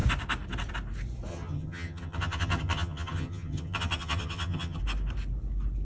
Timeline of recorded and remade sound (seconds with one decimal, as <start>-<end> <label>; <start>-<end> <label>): 0.0-1.3 recorded; 1.3-4.8 remade; 4.8-5.8 recorded